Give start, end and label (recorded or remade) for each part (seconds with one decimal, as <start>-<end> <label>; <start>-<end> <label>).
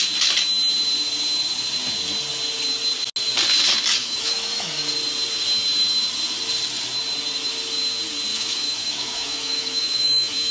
0.0-4.0 recorded; 4.0-4.9 remade; 4.9-8.3 recorded; 8.3-10.5 remade